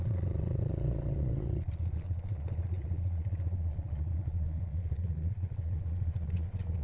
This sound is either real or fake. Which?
fake